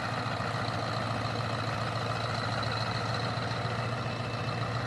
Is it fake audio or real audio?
real